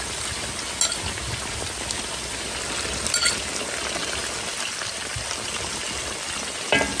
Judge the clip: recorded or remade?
recorded